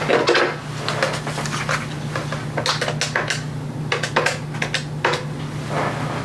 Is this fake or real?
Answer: real